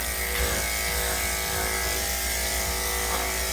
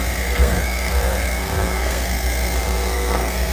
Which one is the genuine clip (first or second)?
first